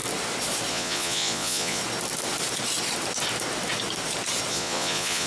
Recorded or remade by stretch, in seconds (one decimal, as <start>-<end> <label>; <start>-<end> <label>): 0.0-0.7 recorded; 0.7-1.8 remade; 1.8-4.5 recorded; 4.5-5.3 remade